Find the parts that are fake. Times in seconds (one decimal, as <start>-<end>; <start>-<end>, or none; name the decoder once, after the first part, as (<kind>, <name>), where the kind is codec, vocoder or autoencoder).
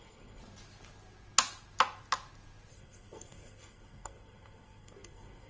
0.0-0.4 (codec, SNAC); 2.7-5.5